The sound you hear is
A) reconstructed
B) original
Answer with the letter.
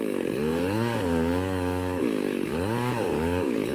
A